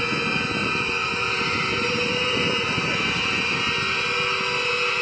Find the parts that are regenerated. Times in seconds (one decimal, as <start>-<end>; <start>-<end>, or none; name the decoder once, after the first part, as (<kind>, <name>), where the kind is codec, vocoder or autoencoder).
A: 0.6-3.6 (vocoder, BigVGAN v2)